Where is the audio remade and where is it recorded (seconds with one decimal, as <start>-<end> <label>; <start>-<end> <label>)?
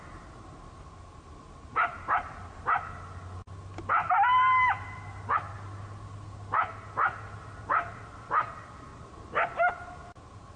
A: 0.0-10.6 recorded